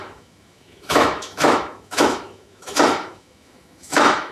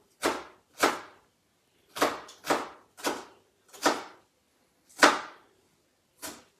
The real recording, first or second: second